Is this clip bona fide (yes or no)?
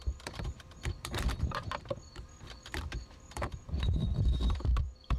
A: no